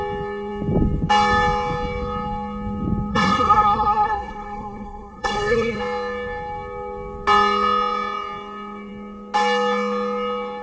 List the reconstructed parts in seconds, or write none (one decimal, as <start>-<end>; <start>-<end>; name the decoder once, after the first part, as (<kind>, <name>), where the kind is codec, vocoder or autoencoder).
3.1-5.8 (codec, SNAC)